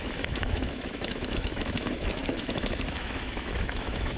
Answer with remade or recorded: remade